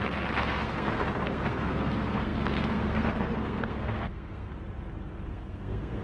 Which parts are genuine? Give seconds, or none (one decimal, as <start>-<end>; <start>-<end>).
4.5-5.3